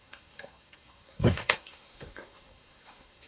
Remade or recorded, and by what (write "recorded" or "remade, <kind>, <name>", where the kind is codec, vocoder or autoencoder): remade, codec, SNAC